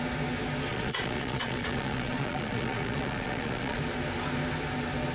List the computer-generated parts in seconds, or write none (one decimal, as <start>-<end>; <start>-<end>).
0.7-3.8